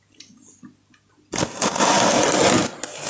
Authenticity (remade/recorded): recorded